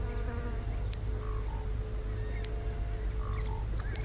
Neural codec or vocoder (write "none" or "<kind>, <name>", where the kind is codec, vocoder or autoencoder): none